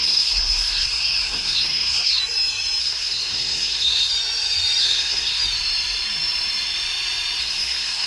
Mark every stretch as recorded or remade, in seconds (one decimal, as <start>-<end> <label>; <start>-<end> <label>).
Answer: 0.0-2.2 remade; 2.2-2.8 recorded; 2.8-4.1 remade; 4.1-4.8 recorded; 4.8-5.4 remade; 5.4-7.4 recorded; 7.4-8.1 remade